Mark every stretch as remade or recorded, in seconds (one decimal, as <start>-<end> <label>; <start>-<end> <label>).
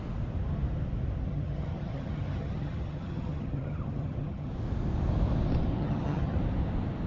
0.0-1.3 recorded; 1.3-4.5 remade; 4.5-5.8 recorded; 5.8-6.4 remade; 6.4-7.1 recorded